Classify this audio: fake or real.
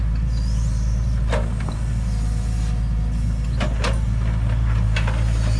real